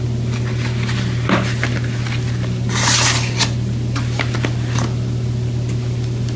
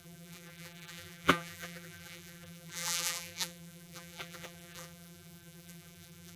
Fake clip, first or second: second